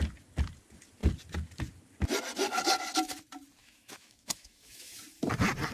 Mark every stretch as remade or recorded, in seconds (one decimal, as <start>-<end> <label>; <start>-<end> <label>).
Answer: 0.0-3.6 recorded; 3.6-5.0 remade; 5.0-5.7 recorded